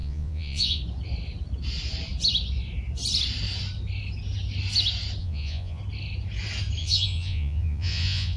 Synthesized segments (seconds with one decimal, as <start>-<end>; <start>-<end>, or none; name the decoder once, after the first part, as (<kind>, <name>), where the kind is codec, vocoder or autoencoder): 0.0-0.8 (vocoder, Vocos); 5.2-5.8; 6.8-8.4